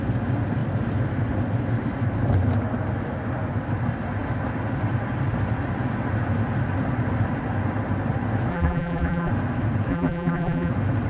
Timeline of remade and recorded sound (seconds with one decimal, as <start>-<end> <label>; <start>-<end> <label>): 0.0-8.5 recorded; 8.5-9.3 remade; 9.3-9.9 recorded; 9.9-10.7 remade; 10.7-11.1 recorded